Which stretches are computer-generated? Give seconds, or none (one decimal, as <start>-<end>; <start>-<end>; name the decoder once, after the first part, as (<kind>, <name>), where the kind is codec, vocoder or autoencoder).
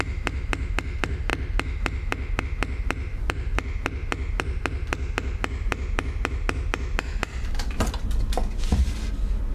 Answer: none